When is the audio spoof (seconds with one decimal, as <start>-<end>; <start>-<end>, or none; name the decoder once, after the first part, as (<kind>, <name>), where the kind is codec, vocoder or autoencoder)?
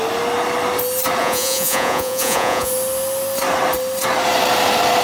1.2-2.7 (vocoder, Vocos)